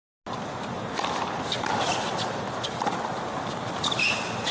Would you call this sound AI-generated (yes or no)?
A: no